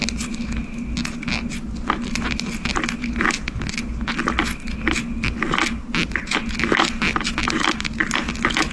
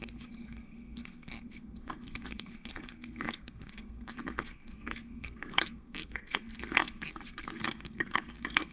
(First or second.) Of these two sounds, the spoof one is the second